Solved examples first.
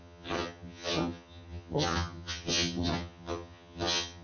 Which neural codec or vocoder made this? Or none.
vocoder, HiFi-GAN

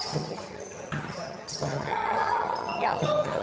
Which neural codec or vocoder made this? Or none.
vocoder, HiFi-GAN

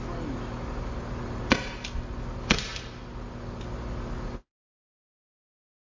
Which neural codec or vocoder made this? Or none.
none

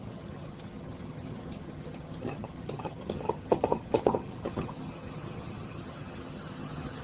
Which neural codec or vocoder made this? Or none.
vocoder, HiFi-GAN